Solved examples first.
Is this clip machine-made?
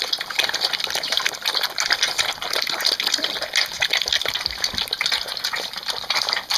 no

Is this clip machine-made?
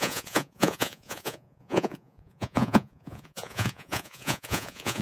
yes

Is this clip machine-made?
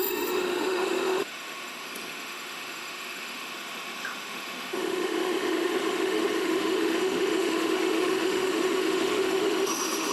yes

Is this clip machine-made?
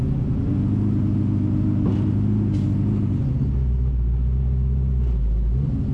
no